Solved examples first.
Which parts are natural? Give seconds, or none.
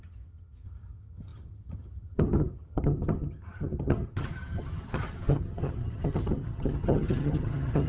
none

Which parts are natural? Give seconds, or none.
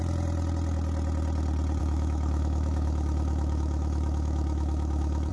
0.0-1.8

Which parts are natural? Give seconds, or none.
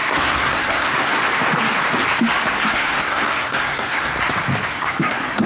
1.2-2.6; 4.1-4.7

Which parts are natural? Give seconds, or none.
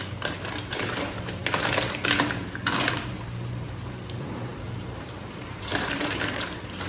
1.4-3.1